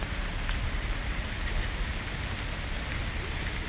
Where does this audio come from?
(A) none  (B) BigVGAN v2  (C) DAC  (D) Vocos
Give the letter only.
A